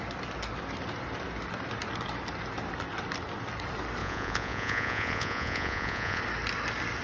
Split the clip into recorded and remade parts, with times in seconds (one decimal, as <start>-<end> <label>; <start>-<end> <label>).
0.0-4.0 recorded; 4.0-6.2 remade; 6.2-7.0 recorded